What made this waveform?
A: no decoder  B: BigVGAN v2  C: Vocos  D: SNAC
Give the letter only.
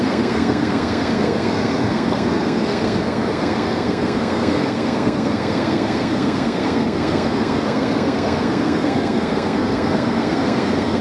D